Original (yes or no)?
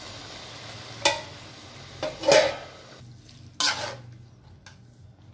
yes